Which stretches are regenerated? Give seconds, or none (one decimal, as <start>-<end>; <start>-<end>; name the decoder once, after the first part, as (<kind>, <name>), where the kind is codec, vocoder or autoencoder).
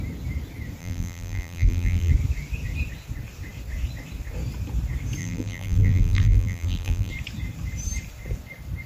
0.8-2.1 (vocoder, BigVGAN v2); 5.2-7.1